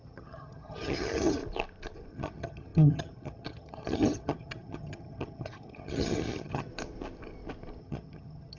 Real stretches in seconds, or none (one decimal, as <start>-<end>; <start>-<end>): 1.4-2.1; 6.7-7.8

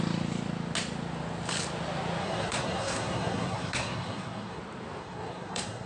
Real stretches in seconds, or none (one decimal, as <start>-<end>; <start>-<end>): 0.0-2.2; 4.6-5.0

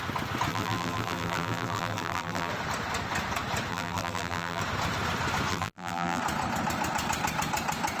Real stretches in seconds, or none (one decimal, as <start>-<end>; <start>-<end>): 0.0-0.5; 2.5-3.7; 4.6-5.5; 6.2-8.0

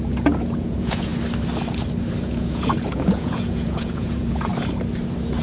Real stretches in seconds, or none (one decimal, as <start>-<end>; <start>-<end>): 1.1-2.2; 4.5-5.4